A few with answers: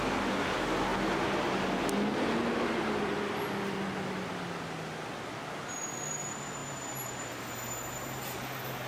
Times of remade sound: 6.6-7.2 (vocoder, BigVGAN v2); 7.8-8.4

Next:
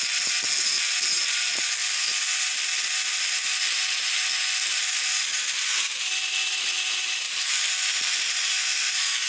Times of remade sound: none

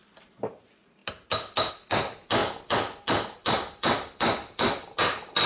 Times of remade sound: none

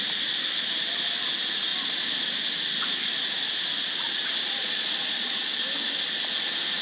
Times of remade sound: 4.6-5.6 (vocoder, Vocos)

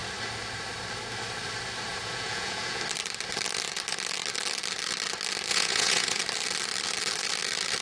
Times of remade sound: 1.9-2.8 (vocoder, Vocos); 5.5-6.2